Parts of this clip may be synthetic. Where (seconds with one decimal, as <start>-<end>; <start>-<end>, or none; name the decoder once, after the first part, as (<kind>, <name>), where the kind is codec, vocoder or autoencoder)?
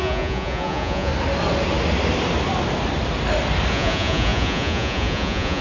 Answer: 0.0-1.1 (vocoder, Vocos); 3.7-5.6